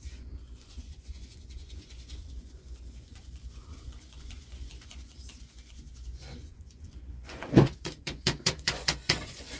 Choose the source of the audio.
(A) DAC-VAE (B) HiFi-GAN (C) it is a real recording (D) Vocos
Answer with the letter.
D